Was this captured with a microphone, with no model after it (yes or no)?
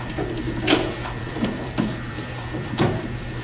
no